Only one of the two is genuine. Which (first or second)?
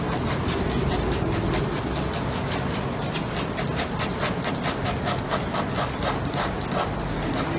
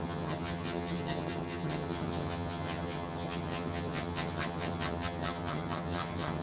first